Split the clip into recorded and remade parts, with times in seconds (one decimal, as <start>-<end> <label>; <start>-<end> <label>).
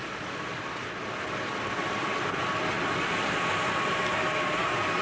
0.0-1.8 recorded; 1.8-2.4 remade; 2.4-5.0 recorded